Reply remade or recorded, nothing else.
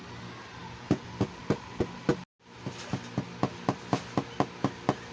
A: recorded